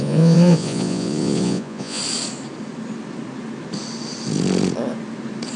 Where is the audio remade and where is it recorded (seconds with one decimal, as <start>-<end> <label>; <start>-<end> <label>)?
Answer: 0.0-2.0 remade; 2.0-5.6 recorded